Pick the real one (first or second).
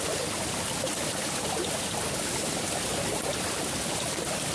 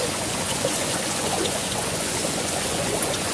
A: first